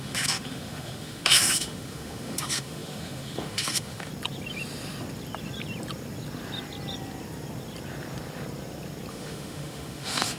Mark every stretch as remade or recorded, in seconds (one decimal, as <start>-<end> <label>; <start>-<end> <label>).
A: 0.0-4.1 remade; 4.1-9.1 recorded; 9.1-10.4 remade